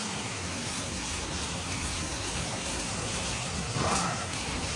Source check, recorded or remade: remade